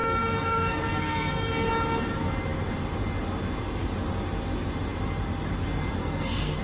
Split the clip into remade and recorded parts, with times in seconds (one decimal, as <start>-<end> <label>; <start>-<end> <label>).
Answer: 0.0-1.7 remade; 1.7-6.0 recorded; 6.0-6.6 remade